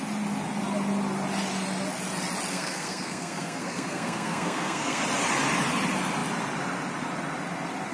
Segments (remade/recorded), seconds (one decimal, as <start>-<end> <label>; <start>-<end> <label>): 0.0-2.5 recorded; 2.5-5.0 remade; 5.0-7.9 recorded